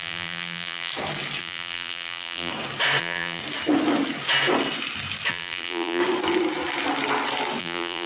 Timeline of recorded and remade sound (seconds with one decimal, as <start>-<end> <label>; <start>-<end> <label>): 0.0-0.9 remade; 0.9-1.4 recorded; 1.4-2.5 remade; 2.5-3.0 recorded; 3.0-3.4 remade; 3.4-5.3 recorded; 5.3-6.0 remade; 6.0-7.6 recorded; 7.6-8.1 remade